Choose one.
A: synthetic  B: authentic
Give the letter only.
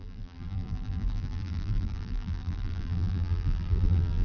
A